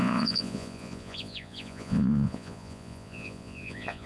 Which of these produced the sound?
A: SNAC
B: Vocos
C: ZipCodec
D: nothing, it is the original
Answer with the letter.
B